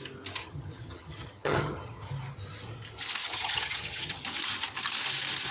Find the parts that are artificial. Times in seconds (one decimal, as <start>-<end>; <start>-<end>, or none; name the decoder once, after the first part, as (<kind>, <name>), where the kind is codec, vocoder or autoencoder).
0.4-2.1 (vocoder, HiFi-GAN); 3.2-4.2